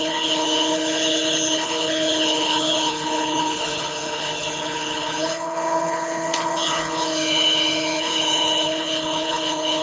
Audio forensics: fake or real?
fake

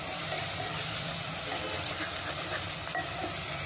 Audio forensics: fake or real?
real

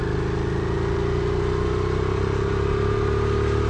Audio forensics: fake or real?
real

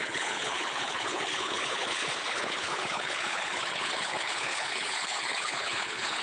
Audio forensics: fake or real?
fake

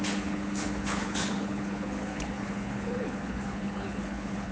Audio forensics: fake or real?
fake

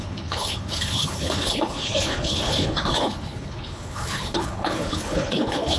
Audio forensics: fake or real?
fake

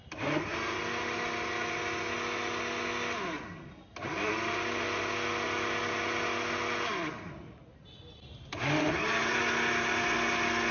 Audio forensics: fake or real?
real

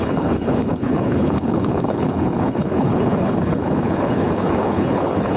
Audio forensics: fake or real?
fake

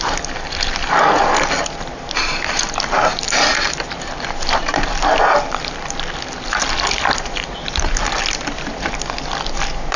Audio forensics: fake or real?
real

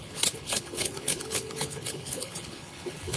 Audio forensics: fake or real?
fake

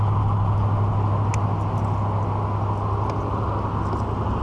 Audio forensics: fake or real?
real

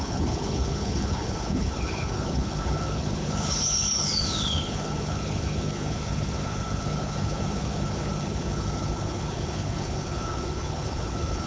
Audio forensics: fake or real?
fake